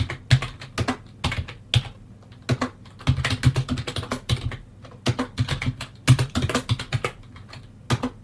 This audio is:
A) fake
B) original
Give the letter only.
B